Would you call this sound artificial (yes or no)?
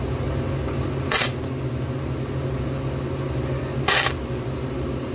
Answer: no